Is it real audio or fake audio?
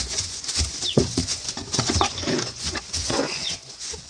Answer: fake